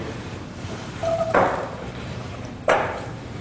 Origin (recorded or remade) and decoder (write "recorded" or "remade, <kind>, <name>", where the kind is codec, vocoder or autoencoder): remade, vocoder, BigVGAN v2